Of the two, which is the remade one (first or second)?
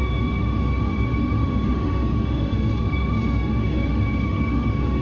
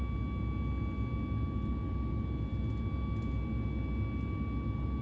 first